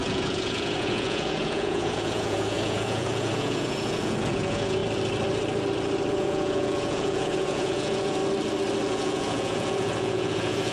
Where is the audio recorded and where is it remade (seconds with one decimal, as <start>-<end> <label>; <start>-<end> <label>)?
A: 0.0-4.8 remade; 4.8-6.1 recorded; 6.1-8.2 remade; 8.2-8.9 recorded; 8.9-10.7 remade